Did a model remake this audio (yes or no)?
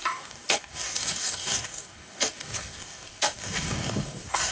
yes